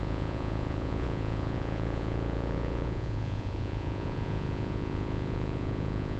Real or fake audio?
fake